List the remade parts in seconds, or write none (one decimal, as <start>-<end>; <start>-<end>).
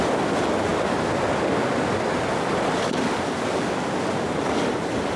none